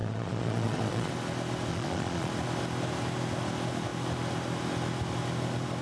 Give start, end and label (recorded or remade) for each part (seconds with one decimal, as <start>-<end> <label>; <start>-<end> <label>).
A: 0.0-1.1 remade; 1.1-1.7 recorded; 1.7-2.3 remade; 2.3-5.8 recorded